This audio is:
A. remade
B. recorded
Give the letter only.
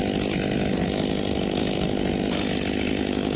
B